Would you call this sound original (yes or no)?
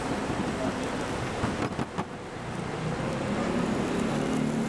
yes